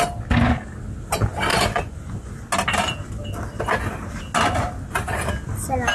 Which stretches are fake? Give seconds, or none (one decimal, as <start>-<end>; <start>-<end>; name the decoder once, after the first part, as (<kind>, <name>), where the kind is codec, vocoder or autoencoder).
1.5-2.3 (vocoder, Vocos)